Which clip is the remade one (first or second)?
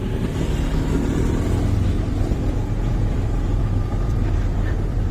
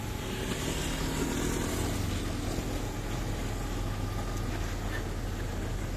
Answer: first